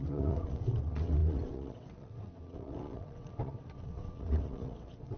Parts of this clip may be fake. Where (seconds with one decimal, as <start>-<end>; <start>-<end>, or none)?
0.0-5.2